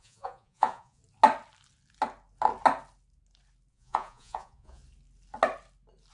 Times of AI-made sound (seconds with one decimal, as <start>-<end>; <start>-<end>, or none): 0.0-1.0; 3.7-4.8